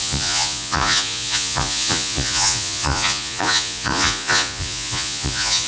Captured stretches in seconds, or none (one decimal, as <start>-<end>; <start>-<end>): none